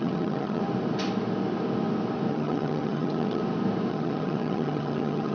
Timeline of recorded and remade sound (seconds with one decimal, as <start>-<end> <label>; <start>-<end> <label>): 0.0-0.6 remade; 0.6-2.3 recorded; 2.3-3.4 remade; 3.4-3.9 recorded; 3.9-5.3 remade